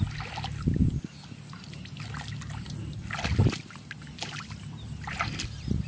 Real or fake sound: real